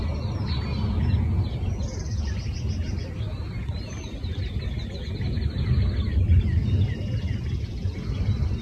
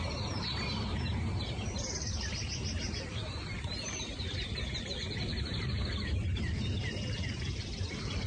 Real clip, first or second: first